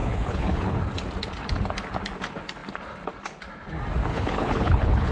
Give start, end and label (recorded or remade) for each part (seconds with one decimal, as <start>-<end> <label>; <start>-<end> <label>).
0.0-0.8 remade; 0.8-4.1 recorded; 4.1-5.1 remade